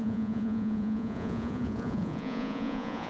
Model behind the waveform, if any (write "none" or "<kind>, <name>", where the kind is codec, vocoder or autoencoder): vocoder, Vocos